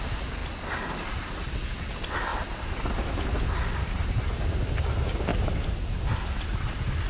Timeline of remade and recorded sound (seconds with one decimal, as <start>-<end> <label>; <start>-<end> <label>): 0.0-7.1 recorded

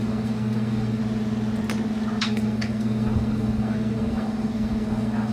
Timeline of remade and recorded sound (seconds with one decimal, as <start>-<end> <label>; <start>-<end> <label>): 0.0-1.0 remade; 1.0-2.2 recorded; 2.2-5.3 remade

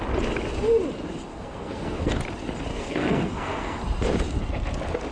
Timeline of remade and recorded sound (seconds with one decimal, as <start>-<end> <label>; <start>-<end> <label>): 0.0-1.3 recorded; 1.3-2.1 remade; 2.1-2.7 recorded; 2.7-3.8 remade; 3.8-5.1 recorded

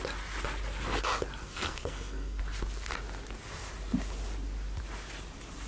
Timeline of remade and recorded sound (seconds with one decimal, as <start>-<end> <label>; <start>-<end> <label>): 0.0-1.4 recorded; 1.4-2.4 remade; 2.4-5.7 recorded